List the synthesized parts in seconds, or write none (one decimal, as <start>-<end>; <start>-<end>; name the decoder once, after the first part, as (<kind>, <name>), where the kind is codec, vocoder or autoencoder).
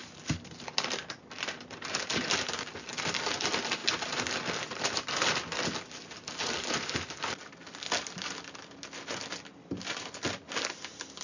none